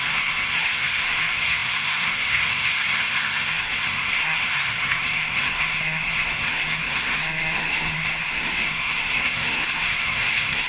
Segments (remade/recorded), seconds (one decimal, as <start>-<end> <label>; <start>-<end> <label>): 0.0-10.7 remade